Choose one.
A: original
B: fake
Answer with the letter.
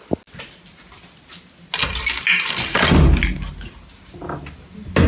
A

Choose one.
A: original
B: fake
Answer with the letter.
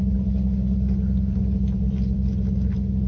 A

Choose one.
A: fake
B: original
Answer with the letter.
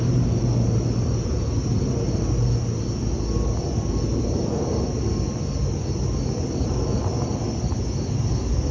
B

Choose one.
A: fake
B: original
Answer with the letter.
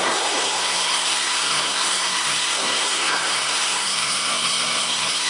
A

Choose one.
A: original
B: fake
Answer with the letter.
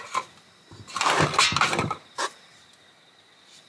B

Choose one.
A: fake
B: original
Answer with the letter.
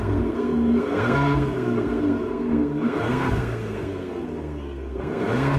A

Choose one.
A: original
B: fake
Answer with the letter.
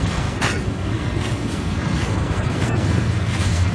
B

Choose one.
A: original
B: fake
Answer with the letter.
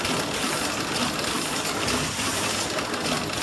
B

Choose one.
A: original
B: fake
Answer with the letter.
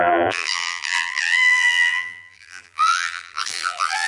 B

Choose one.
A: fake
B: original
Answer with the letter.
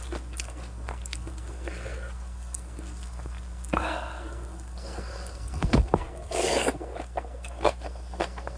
A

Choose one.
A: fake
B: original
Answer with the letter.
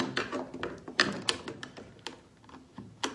B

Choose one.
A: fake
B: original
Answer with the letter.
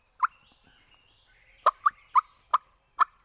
B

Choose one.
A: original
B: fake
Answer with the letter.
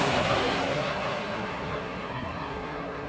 B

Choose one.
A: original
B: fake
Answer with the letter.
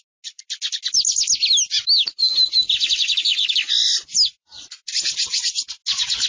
A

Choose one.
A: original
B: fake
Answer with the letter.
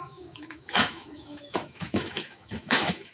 B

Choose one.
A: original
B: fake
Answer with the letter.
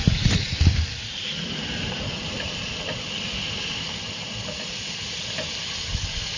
A